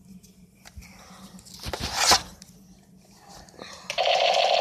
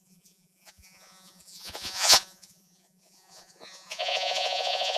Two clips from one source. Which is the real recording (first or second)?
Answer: first